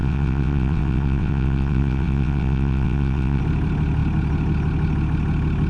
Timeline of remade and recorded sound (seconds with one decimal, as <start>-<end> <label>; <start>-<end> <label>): 0.0-3.4 remade; 3.4-5.7 recorded